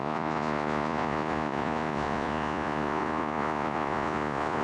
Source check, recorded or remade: remade